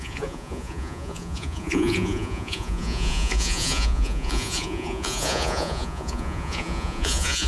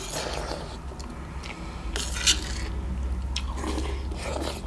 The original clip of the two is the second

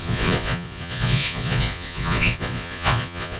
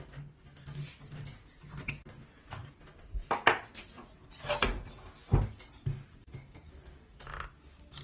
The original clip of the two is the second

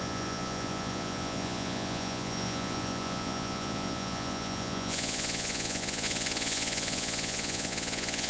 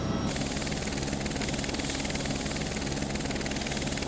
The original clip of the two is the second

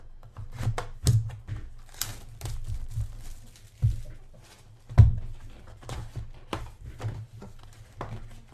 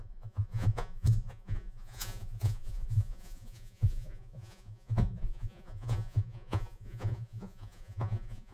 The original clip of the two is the first